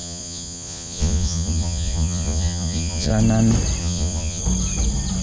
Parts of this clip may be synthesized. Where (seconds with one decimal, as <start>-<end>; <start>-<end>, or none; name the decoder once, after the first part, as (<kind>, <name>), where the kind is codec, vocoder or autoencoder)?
0.0-3.1 (vocoder, Vocos); 3.8-4.4